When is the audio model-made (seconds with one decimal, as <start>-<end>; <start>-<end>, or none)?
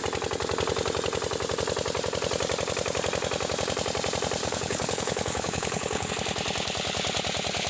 4.4-6.1